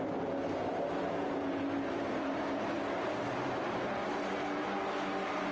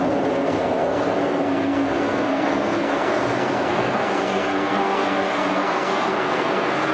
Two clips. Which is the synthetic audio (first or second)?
second